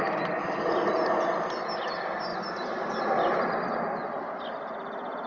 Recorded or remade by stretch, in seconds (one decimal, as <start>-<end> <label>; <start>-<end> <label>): 0.0-2.3 recorded; 2.3-3.8 remade; 3.8-5.3 recorded